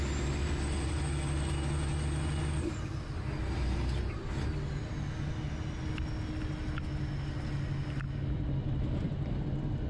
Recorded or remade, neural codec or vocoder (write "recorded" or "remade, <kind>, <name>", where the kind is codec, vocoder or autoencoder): recorded